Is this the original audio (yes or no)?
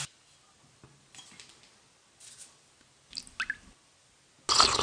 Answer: yes